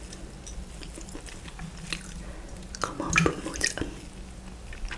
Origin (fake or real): real